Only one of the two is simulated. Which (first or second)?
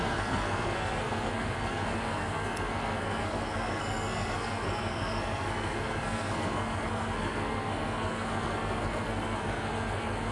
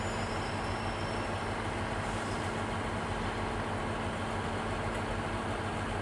first